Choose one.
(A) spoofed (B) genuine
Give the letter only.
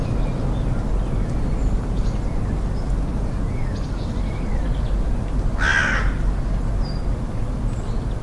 B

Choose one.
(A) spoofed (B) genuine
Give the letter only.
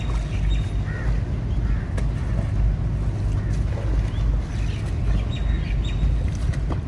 B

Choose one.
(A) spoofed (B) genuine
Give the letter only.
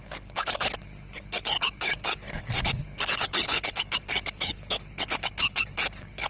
A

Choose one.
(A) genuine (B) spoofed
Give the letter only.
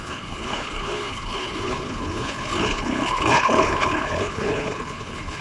B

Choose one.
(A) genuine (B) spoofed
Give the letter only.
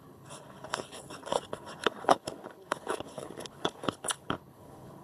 B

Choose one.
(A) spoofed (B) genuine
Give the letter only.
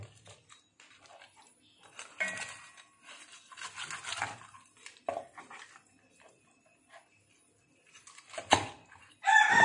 B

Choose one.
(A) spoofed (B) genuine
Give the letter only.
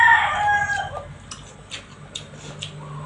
B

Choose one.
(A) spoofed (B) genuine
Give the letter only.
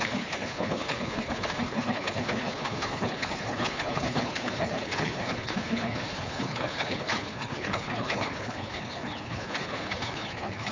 A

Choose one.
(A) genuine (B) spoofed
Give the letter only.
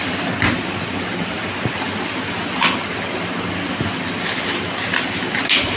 A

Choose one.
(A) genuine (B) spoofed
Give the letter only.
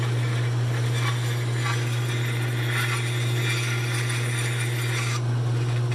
A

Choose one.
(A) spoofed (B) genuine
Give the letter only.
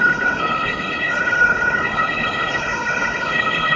A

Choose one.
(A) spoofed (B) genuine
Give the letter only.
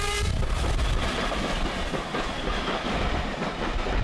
B